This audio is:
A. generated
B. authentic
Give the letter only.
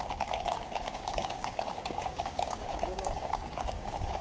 A